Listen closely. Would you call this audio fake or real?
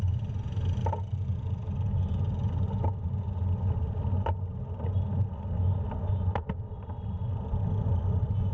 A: real